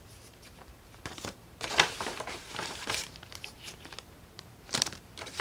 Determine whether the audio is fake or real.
fake